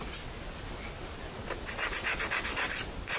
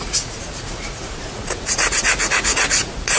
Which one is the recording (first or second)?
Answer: first